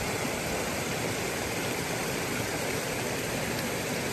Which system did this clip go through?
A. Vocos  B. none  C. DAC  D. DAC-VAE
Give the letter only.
B